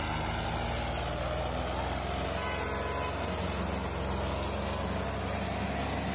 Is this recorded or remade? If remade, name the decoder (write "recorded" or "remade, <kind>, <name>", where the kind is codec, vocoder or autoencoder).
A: recorded